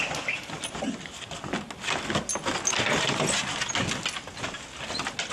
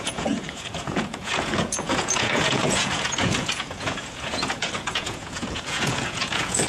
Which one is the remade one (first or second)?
second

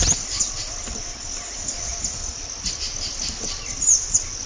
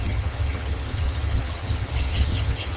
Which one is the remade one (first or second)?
second